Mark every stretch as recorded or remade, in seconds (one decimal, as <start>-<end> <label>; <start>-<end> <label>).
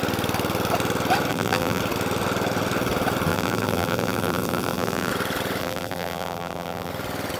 0.0-1.3 recorded; 1.3-1.8 remade; 1.8-3.3 recorded; 3.3-5.1 remade; 5.1-5.6 recorded; 5.6-6.9 remade; 6.9-7.4 recorded